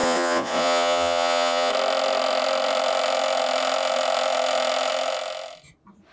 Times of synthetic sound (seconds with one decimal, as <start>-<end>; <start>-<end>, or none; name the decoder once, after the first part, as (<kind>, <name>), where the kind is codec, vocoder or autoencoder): 0.0-1.7 (vocoder, Vocos)